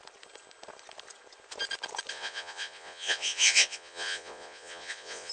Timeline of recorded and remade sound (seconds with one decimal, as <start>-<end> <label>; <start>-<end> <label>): 0.0-2.1 recorded; 2.1-5.3 remade